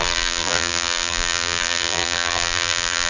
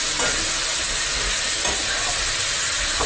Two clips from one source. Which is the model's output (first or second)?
first